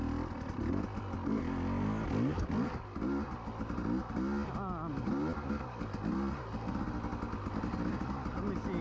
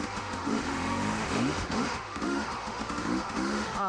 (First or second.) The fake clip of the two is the second